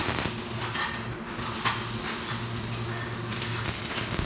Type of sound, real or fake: real